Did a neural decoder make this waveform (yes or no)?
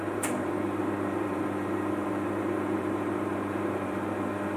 yes